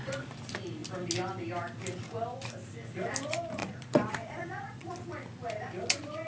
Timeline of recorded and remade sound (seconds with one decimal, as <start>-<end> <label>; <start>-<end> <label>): 0.0-3.6 recorded; 3.6-4.9 remade; 4.9-6.3 recorded